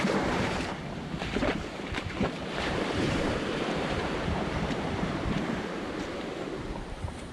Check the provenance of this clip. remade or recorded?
remade